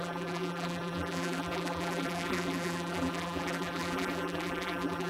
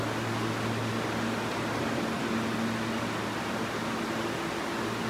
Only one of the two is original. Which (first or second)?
second